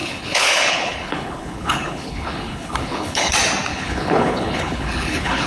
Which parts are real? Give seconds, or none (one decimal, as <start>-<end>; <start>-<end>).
3.3-3.7